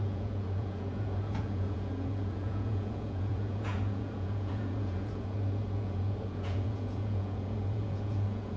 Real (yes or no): no